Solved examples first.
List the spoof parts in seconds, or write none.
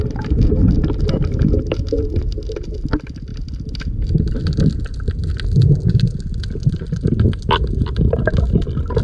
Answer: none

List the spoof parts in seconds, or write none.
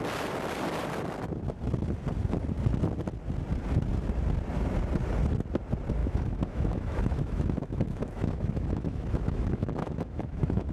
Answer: 6.0-10.7